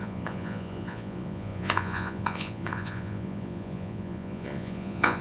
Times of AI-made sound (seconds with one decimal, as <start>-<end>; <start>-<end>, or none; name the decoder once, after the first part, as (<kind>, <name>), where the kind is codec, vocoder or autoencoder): 0.0-5.2 (vocoder, Vocos)